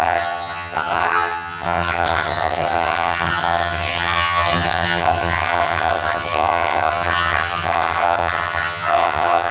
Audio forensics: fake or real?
fake